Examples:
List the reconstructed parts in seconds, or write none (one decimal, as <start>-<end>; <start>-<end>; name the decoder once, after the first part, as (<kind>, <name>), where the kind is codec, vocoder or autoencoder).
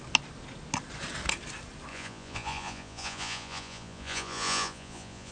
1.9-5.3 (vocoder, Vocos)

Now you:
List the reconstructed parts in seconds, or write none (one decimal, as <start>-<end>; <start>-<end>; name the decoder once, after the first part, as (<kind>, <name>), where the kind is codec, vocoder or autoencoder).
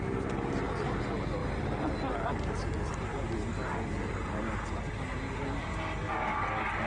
none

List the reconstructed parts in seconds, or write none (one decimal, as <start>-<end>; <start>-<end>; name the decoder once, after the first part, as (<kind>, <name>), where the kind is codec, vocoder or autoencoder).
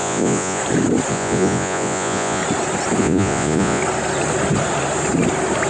0.0-0.6 (vocoder, Vocos); 1.1-2.4; 3.0-3.8